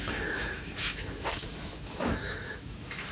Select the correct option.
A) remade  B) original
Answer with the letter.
A